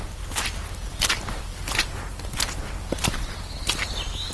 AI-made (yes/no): no